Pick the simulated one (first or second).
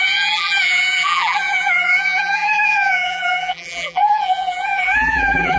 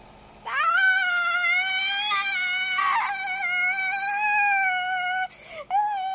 first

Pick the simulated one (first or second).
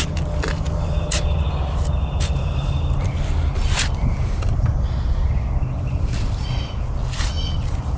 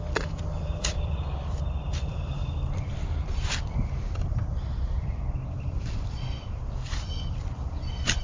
second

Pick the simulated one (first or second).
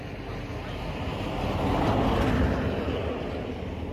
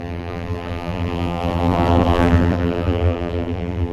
second